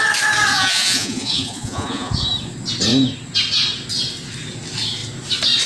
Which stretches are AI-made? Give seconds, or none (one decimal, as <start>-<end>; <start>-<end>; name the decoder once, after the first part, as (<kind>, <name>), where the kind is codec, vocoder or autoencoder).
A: 0.5-2.1 (vocoder, Vocos)